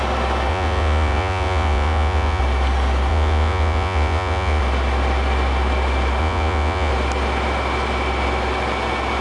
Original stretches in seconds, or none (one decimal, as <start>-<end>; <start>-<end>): 0.0-0.5; 2.4-3.1; 4.6-6.2; 6.9-9.2